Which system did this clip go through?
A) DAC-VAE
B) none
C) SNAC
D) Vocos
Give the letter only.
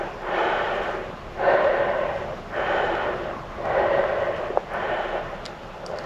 B